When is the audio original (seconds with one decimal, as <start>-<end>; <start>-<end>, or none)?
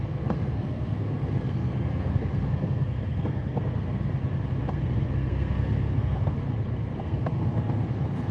4.2-4.7; 6.4-7.0